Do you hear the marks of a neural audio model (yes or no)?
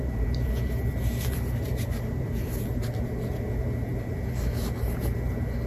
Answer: yes